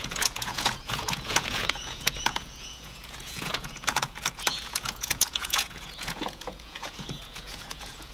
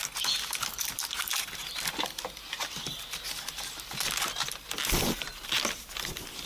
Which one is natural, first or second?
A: second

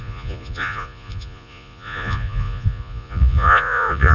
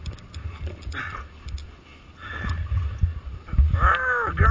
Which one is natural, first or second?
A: second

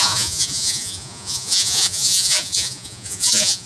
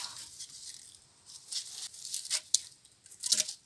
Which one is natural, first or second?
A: second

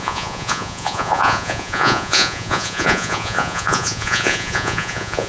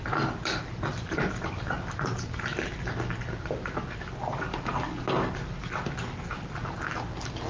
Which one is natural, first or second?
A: second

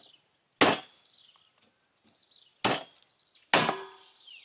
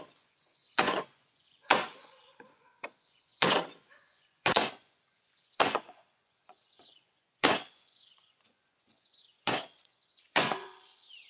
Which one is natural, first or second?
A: first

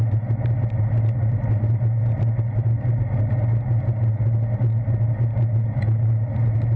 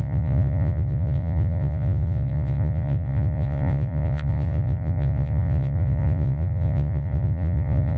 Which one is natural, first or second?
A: first